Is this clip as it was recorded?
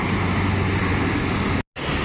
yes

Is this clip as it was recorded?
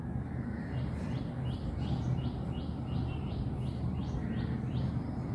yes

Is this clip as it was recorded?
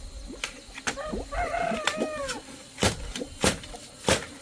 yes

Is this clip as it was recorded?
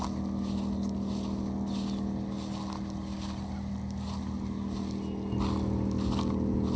yes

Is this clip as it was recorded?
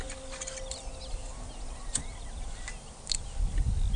yes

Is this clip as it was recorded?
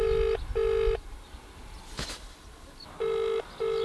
yes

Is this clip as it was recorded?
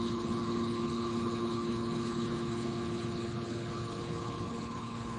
no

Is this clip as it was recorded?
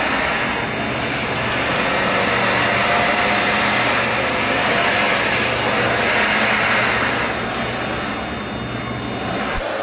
yes